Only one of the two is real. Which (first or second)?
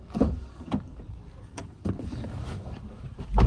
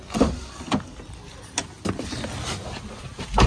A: second